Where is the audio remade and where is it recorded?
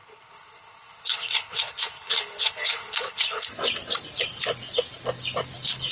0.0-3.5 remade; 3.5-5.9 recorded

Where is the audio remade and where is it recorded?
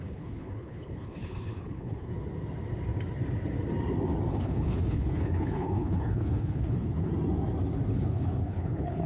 0.0-2.1 remade; 2.1-4.3 recorded; 4.3-7.1 remade; 7.1-7.9 recorded; 7.9-9.1 remade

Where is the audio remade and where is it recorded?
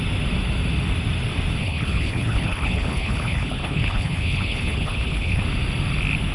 0.0-1.6 recorded; 1.6-5.4 remade; 5.4-6.3 recorded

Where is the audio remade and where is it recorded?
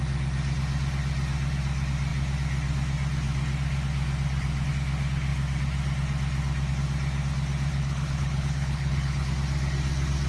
0.0-7.7 recorded; 7.7-9.3 remade; 9.3-10.3 recorded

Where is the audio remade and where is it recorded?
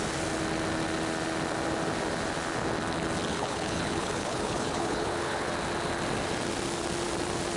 0.0-3.3 recorded; 3.3-5.5 remade; 5.5-7.6 recorded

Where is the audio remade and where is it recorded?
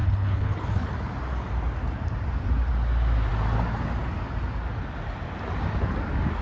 0.0-0.9 remade; 0.9-6.4 recorded